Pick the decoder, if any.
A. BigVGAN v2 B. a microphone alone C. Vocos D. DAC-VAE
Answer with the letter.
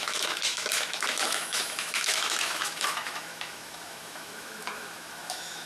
D